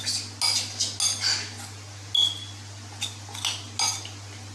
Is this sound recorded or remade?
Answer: recorded